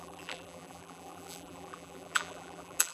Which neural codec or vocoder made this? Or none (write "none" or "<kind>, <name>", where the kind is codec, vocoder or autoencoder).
vocoder, BigVGAN v2